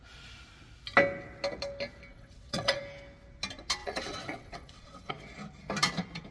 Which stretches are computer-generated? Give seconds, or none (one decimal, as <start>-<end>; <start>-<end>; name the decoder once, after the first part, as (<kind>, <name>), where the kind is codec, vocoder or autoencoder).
2.1-2.8 (vocoder, WaveNeXt); 3.8-5.1